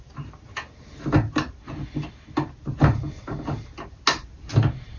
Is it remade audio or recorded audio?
recorded